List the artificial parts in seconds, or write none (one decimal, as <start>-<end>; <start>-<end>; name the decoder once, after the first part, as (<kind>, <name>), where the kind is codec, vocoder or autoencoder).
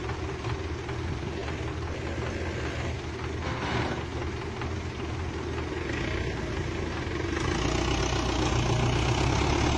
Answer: none